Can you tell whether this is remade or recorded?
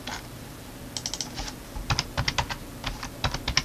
recorded